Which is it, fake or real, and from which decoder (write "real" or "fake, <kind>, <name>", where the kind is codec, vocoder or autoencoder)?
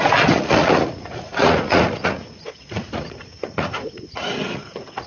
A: fake, vocoder, Vocos